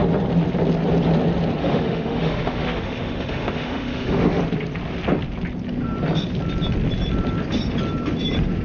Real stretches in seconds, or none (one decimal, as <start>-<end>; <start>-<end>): 0.0-1.6; 4.4-8.6